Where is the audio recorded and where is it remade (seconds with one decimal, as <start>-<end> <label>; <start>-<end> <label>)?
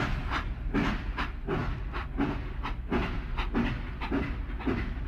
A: 0.0-5.1 recorded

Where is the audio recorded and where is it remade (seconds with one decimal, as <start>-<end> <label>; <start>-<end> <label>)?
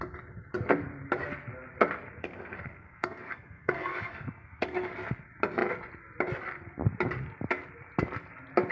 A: 0.0-2.2 recorded; 2.2-4.9 remade; 4.9-8.7 recorded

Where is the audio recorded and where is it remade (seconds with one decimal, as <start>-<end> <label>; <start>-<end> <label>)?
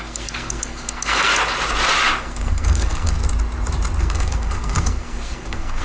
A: 0.0-1.3 remade; 1.3-2.2 recorded; 2.2-3.2 remade; 3.2-4.0 recorded; 4.0-5.8 remade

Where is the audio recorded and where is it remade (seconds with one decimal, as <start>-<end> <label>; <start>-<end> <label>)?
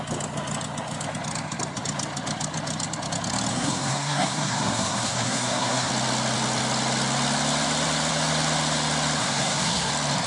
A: 0.0-3.5 recorded; 3.5-5.9 remade; 5.9-9.2 recorded; 9.2-9.9 remade; 9.9-10.3 recorded